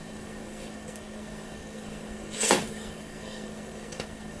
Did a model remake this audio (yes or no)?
yes